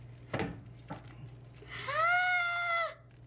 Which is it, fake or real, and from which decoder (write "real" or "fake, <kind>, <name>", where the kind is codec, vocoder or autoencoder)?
real